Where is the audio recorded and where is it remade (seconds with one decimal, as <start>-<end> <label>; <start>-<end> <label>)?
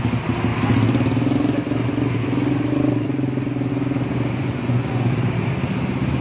0.0-4.3 recorded; 4.3-5.1 remade; 5.1-6.2 recorded